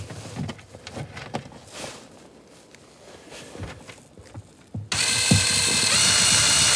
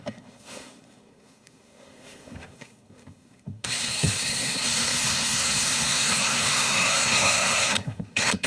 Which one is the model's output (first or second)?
second